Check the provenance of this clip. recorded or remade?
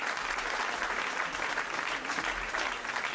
recorded